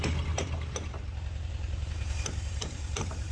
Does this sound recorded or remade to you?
remade